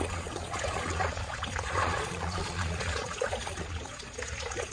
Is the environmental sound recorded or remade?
remade